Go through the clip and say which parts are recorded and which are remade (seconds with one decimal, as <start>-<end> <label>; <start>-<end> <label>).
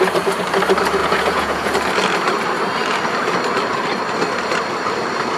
0.0-1.0 recorded; 1.0-1.7 remade; 1.7-5.4 recorded